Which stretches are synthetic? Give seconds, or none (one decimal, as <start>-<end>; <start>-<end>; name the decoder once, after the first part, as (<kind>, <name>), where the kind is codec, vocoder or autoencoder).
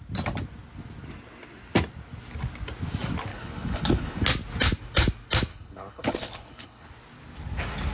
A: 3.3-4.2 (codec, HILCodec); 5.5-6.9